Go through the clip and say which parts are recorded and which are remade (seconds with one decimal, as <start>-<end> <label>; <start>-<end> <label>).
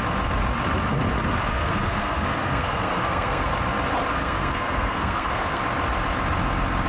0.0-1.5 recorded; 1.5-3.5 remade; 3.5-4.1 recorded; 4.1-5.6 remade; 5.6-6.9 recorded